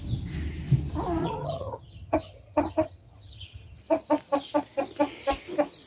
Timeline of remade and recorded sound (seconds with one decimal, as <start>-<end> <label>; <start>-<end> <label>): 0.0-1.2 recorded; 1.2-3.8 remade; 3.8-5.9 recorded